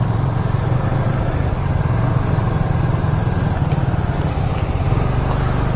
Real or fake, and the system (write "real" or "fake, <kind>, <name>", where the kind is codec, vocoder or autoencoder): real